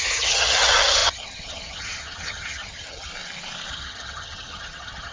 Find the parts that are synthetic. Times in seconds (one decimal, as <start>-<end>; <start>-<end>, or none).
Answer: 0.0-3.1; 3.7-5.1